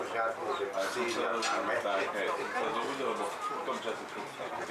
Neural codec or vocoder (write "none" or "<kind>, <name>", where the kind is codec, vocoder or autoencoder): none